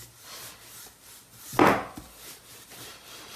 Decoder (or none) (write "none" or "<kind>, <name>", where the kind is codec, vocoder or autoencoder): none